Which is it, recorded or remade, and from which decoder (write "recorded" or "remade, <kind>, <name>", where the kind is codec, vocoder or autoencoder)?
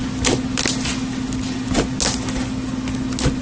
recorded